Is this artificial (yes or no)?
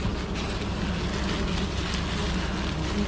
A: no